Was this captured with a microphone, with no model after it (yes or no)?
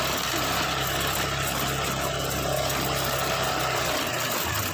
yes